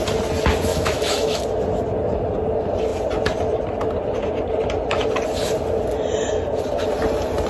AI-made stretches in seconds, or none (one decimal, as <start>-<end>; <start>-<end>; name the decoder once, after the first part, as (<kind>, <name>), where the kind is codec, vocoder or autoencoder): 0.7-1.4 (autoencoder, DAC-VAE)

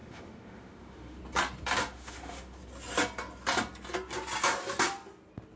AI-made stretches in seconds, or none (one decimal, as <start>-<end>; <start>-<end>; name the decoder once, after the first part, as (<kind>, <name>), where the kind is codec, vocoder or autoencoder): 0.0-1.2 (autoencoder, DAC-VAE); 1.8-2.6

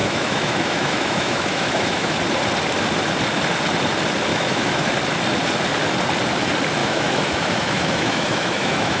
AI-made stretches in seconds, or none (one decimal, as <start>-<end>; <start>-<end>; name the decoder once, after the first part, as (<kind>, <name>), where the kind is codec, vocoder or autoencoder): 0.0-2.2 (autoencoder, DAC-VAE); 4.3-4.9; 6.8-9.0

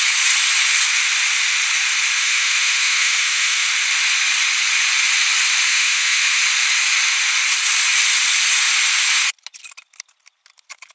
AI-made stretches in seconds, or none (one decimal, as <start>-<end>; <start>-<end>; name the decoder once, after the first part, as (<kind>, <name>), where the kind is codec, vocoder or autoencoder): 2.2-3.7 (autoencoder, DAC-VAE); 5.7-6.4

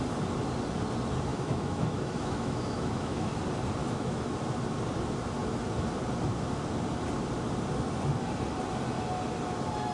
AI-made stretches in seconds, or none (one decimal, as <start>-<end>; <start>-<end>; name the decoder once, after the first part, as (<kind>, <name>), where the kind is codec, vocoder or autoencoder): 1.3-3.3 (autoencoder, DAC-VAE); 3.8-4.4

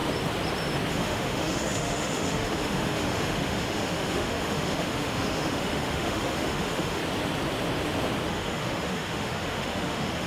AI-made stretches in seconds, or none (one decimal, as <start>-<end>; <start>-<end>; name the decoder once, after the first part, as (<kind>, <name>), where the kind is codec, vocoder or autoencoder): 0.9-7.0 (autoencoder, DAC-VAE); 8.3-10.3

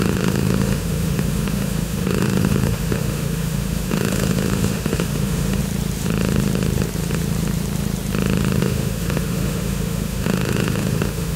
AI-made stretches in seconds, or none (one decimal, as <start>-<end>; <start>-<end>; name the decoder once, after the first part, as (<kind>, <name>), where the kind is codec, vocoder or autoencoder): 0.0-5.6 (autoencoder, DAC-VAE); 8.6-11.4